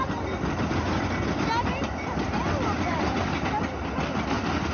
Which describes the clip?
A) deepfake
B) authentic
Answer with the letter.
B